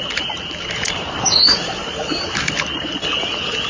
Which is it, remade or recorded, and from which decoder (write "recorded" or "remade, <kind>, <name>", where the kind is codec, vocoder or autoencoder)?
recorded